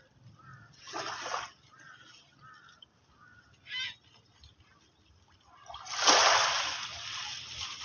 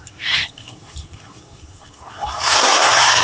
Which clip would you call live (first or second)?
first